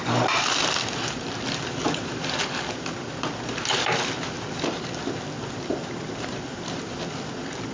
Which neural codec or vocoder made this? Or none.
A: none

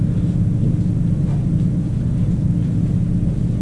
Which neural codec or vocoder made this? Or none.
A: none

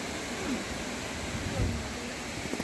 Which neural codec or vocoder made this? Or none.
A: none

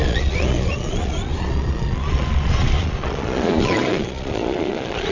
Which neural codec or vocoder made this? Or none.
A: vocoder, Vocos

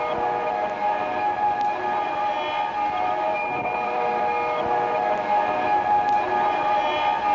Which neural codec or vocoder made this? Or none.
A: none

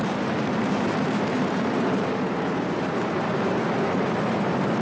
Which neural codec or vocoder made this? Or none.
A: vocoder, BigVGAN v2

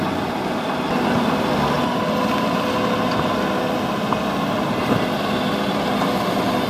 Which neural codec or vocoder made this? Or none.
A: none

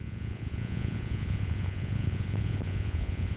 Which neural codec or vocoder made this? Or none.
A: vocoder, Vocos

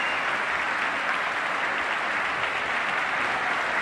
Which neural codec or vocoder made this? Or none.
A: none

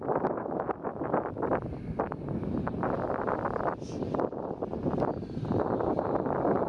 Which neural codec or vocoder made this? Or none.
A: none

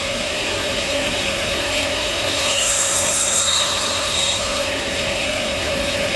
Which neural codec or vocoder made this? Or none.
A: codec, SNAC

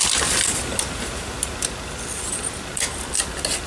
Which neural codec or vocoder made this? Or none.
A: none